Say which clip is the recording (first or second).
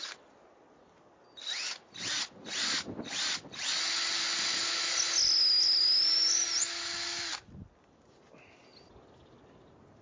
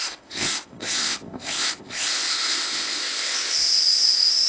first